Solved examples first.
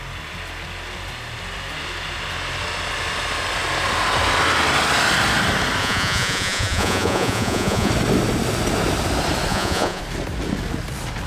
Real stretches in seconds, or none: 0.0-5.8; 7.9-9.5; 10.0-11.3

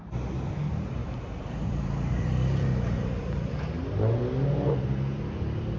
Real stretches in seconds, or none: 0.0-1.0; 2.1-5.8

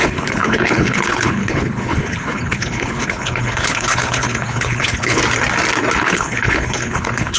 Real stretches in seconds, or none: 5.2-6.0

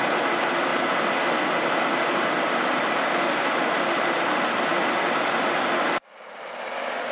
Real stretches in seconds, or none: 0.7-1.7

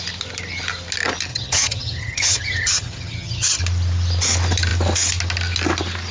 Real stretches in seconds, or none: 0.0-1.3; 3.6-6.1

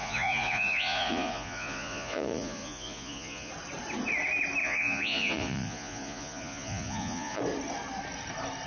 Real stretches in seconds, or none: 3.5-4.6; 7.4-8.7